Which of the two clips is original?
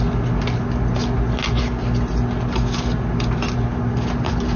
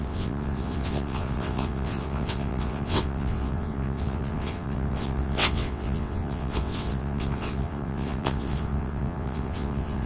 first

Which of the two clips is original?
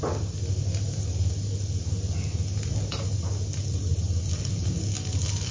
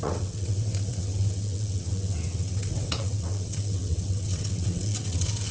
first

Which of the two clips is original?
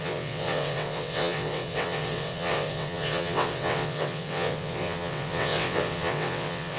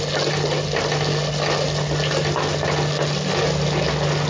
second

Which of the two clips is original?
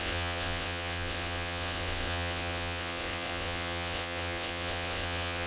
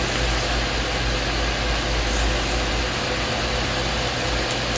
second